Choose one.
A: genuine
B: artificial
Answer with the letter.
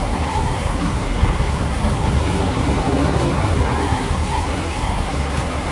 B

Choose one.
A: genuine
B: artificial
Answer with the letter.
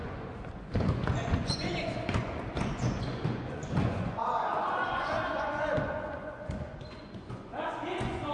B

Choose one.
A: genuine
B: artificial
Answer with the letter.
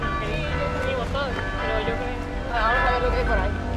A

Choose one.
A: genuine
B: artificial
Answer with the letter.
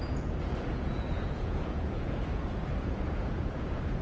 B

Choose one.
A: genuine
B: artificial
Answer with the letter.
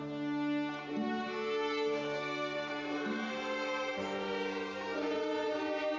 A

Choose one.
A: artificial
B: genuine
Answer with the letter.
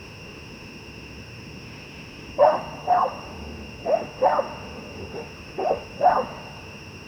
A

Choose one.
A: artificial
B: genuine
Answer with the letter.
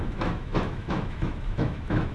A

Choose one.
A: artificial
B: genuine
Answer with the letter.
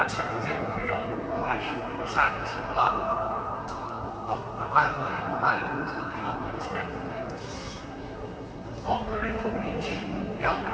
A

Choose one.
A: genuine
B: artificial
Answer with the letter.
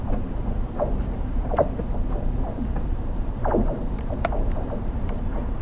B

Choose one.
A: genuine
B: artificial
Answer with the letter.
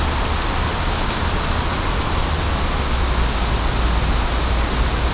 A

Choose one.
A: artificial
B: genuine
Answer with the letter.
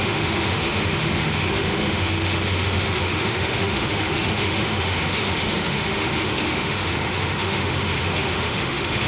A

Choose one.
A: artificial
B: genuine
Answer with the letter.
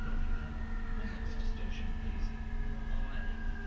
B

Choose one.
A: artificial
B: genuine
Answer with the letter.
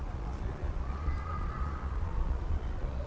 A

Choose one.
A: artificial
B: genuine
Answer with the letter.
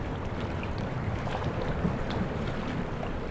B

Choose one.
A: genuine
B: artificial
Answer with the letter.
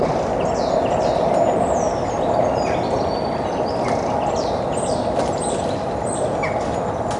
A